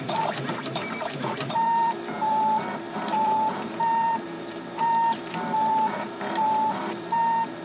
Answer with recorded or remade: remade